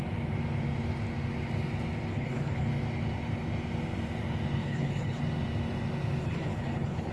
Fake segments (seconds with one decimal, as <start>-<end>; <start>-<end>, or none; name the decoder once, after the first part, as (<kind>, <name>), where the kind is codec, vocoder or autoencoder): 2.1-2.7 (codec, HILCodec); 4.6-5.2; 6.2-7.1